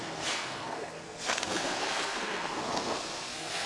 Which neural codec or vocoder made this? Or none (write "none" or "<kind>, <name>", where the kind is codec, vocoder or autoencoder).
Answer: codec, SNAC